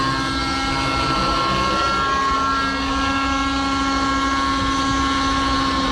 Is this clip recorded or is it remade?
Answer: recorded